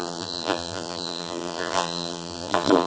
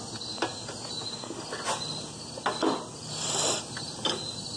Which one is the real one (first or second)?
second